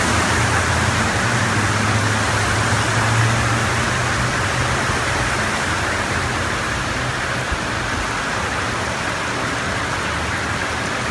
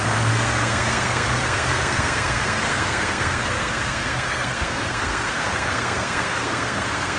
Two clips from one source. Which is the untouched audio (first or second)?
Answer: first